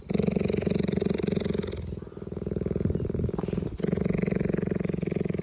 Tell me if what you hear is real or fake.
real